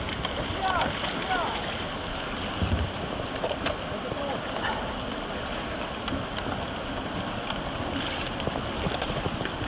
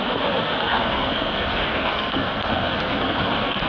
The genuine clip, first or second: first